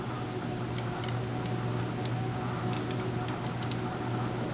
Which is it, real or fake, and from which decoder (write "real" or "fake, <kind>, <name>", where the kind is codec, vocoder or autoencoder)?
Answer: real